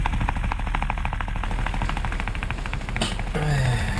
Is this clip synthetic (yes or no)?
no